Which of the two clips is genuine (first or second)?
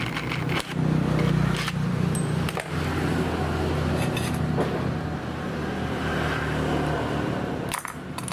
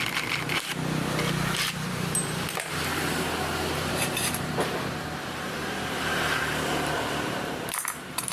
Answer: first